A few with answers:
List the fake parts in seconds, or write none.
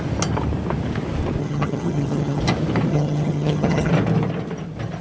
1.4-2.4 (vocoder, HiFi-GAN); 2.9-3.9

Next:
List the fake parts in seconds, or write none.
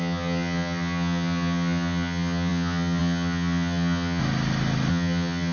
0.0-4.2 (vocoder, HiFi-GAN); 4.9-5.5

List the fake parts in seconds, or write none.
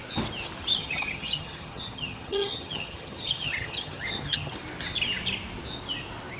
0.8-4.6 (vocoder, HiFi-GAN)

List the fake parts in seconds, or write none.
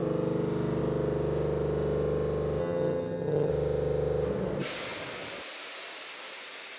2.6-3.5 (vocoder, HiFi-GAN)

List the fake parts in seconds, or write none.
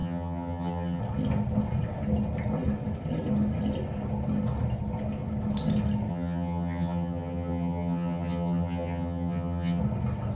0.0-1.0 (vocoder, HiFi-GAN); 6.1-9.8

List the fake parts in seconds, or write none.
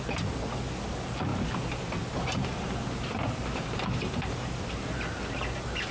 none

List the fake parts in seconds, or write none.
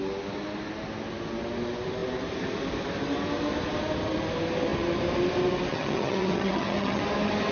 5.7-7.0 (vocoder, HiFi-GAN)